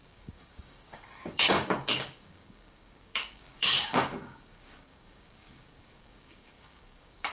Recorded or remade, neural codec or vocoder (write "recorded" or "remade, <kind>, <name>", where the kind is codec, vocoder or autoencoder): remade, codec, DAC